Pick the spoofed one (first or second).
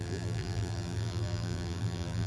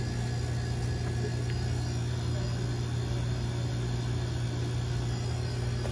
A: first